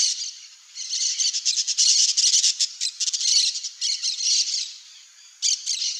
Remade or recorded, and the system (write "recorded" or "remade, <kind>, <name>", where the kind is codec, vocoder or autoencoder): recorded